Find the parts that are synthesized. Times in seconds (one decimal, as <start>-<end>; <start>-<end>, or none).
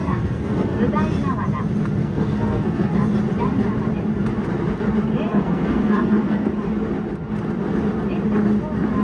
0.0-0.8; 2.0-2.9; 5.3-6.5